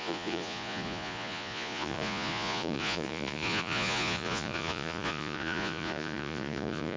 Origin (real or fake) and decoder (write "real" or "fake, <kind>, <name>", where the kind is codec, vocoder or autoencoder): fake, vocoder, Vocos